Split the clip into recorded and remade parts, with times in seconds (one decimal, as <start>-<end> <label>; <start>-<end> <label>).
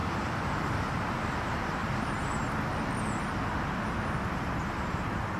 0.0-1.4 recorded; 1.4-1.8 remade; 1.8-5.0 recorded; 5.0-5.4 remade